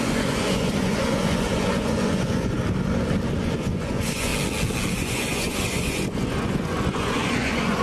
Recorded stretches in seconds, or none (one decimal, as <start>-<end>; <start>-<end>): 2.6-3.4; 4.3-4.9